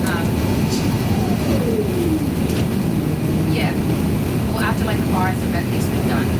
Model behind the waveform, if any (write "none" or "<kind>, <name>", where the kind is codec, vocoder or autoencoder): none